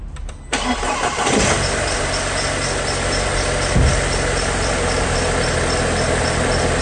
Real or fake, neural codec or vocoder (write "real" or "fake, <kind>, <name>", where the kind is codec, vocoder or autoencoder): real